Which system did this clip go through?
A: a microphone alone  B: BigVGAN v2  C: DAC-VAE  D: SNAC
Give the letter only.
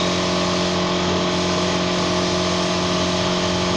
A